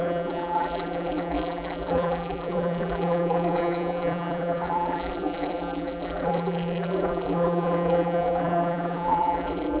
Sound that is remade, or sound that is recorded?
remade